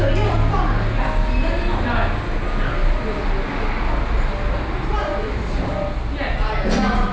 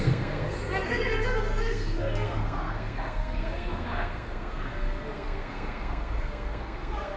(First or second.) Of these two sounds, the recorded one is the first